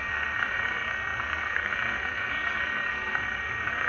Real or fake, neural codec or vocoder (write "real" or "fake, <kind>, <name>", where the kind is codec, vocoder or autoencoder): fake, codec, SNAC